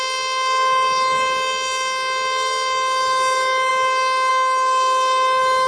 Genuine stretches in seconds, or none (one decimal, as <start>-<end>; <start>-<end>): 0.0-5.7